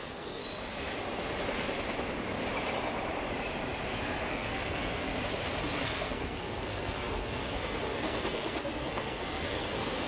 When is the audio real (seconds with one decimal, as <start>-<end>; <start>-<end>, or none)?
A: 0.4-4.3; 5.1-5.8